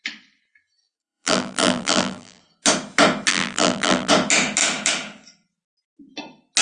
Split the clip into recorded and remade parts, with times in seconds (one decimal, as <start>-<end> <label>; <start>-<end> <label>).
0.0-0.8 recorded; 0.8-2.4 remade; 2.4-3.3 recorded; 3.3-4.1 remade; 4.1-6.6 recorded